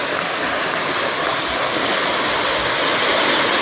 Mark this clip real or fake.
real